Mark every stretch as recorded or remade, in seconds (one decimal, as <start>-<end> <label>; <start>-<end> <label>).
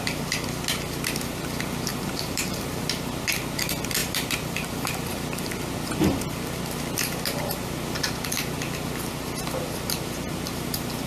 0.0-1.9 recorded; 1.9-2.6 remade; 2.6-4.0 recorded; 4.0-5.1 remade; 5.1-11.1 recorded